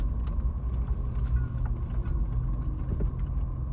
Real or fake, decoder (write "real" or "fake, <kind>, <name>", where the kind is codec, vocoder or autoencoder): real